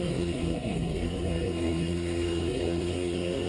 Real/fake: fake